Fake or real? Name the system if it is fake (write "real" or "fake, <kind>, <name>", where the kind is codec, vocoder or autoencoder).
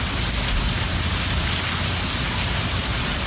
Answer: real